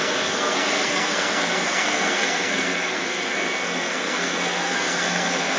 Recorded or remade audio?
remade